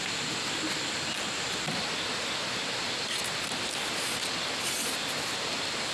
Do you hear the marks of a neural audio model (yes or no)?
no